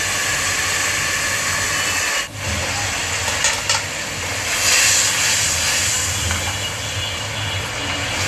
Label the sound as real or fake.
real